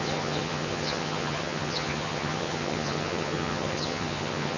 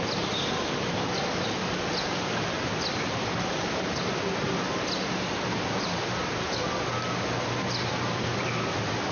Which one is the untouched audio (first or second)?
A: second